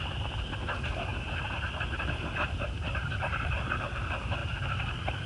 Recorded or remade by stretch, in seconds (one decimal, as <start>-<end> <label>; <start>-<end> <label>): 0.0-1.1 recorded; 1.1-4.0 remade; 4.0-4.4 recorded; 4.4-5.3 remade